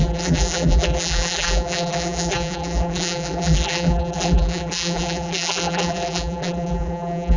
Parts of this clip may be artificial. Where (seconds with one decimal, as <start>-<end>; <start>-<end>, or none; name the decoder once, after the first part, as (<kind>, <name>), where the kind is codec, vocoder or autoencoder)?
0.0-7.4 (vocoder, BigVGAN v2)